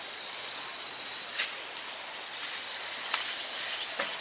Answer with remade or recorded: recorded